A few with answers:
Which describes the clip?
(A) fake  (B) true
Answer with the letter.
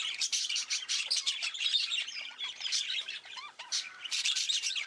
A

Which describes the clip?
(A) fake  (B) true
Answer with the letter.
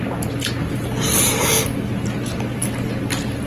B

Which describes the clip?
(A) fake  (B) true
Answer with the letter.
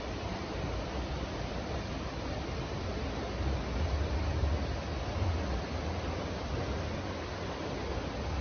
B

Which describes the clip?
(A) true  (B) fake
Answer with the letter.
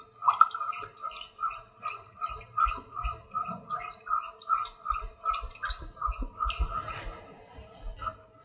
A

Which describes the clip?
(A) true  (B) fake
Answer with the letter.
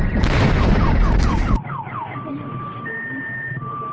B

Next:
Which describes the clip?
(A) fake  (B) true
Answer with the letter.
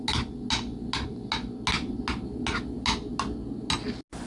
B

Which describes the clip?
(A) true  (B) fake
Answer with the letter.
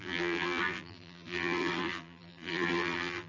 B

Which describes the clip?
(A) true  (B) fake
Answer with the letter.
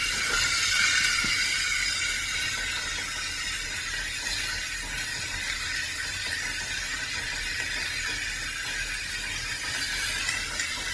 A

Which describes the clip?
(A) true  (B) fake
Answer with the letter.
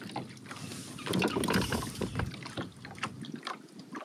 A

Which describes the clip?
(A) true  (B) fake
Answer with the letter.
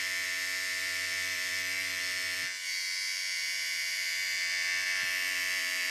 B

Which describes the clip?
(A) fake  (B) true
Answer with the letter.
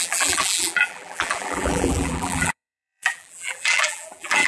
A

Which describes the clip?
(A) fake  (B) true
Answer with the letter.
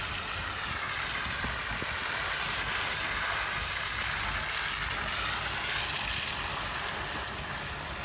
B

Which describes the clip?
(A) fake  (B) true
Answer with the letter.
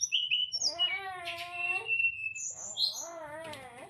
B